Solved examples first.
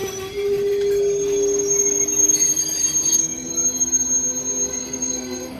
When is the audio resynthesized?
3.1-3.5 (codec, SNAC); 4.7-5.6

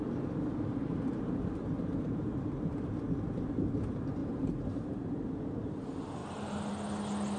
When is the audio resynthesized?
0.8-2.9 (vocoder, BigVGAN v2); 4.2-5.3

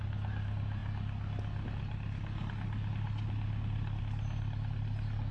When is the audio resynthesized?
none

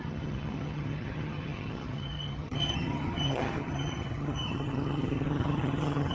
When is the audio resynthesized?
0.0-6.1 (vocoder, HiFi-GAN)

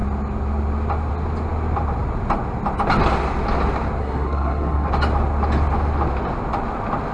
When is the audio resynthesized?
4.0-4.9 (codec, SNAC)

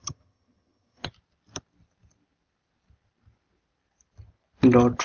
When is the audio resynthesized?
0.0-1.1 (vocoder, HiFi-GAN)

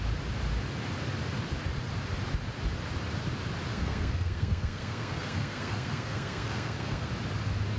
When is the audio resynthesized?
3.7-7.1 (codec, SNAC)

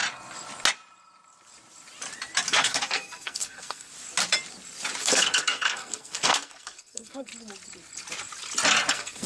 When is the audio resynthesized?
2.5-3.9 (codec, SNAC); 5.0-7.3; 8.9-9.3